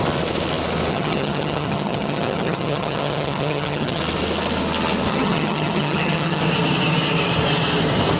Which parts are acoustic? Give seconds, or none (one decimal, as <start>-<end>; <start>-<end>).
0.0-0.9; 4.0-5.1; 6.4-8.2